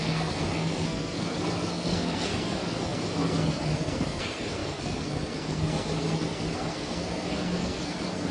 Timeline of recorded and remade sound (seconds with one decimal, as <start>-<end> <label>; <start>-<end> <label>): 0.0-8.3 remade